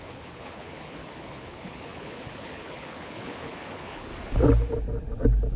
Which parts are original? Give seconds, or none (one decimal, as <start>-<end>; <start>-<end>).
4.1-5.6